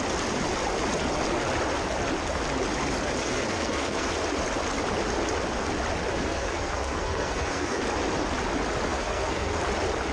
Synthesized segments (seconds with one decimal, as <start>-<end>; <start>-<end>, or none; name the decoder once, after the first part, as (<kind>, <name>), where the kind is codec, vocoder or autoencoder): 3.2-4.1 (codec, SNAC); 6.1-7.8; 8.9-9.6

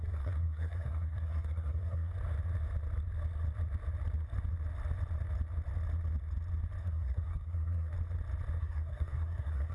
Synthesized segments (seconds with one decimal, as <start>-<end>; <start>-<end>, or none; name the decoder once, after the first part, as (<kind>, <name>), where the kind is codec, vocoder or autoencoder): 0.0-2.1 (codec, SNAC); 6.8-7.9; 8.6-9.7

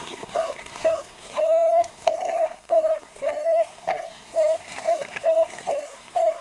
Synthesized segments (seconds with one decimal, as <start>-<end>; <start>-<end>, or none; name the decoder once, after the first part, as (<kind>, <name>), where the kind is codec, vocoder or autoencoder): 0.0-6.4 (codec, SNAC)

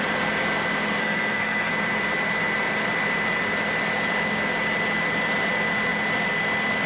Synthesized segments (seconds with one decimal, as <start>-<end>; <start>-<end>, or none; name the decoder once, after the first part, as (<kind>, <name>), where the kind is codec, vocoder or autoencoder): 1.0-1.7 (codec, SNAC)